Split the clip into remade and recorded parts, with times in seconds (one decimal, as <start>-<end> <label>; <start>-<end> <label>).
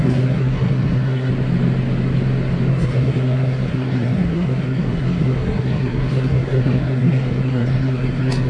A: 0.0-1.3 remade; 1.3-2.7 recorded; 2.7-8.5 remade